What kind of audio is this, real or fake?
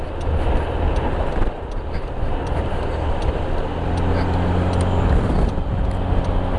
real